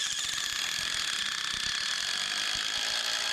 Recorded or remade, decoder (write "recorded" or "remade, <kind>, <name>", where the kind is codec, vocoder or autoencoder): recorded